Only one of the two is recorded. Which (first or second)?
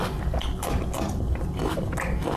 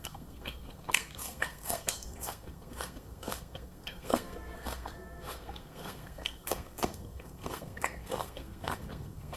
first